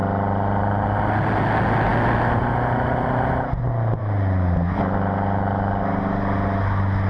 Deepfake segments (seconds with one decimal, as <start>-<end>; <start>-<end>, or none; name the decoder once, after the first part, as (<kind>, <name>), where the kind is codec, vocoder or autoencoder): none